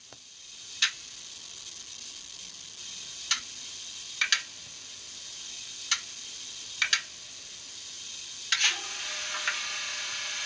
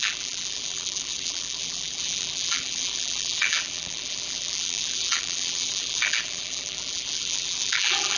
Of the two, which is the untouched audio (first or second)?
first